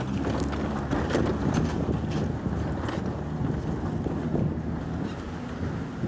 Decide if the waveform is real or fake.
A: real